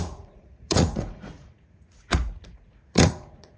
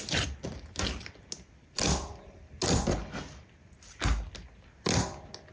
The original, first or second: second